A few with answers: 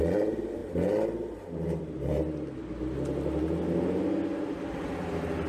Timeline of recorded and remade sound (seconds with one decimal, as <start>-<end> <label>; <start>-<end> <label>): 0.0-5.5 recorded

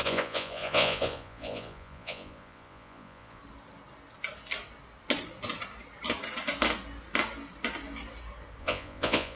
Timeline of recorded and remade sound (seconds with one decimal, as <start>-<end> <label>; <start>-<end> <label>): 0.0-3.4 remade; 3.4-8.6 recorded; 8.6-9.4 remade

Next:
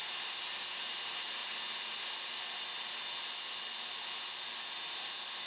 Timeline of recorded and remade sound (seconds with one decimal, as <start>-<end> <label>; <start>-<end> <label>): 0.0-5.5 recorded